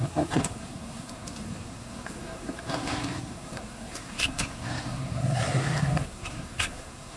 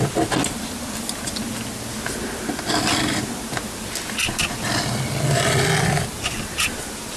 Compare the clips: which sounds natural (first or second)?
second